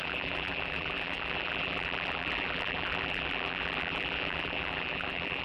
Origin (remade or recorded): remade